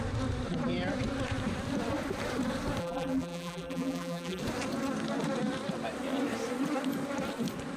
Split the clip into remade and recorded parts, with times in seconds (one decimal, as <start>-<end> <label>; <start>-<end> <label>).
0.0-2.8 recorded; 2.8-4.4 remade; 4.4-7.8 recorded